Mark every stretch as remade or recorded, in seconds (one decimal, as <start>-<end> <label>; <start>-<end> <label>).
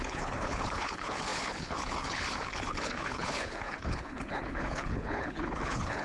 0.0-6.0 remade